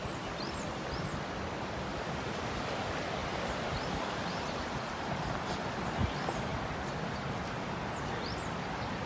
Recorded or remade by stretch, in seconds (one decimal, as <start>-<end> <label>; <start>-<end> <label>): 0.0-1.4 remade; 1.4-1.9 recorded; 1.9-2.6 remade; 2.6-3.2 recorded; 3.2-4.4 remade; 4.4-9.1 recorded